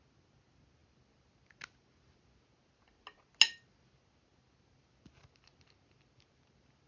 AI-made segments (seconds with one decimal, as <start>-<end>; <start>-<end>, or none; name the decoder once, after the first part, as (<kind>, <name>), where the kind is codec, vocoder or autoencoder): none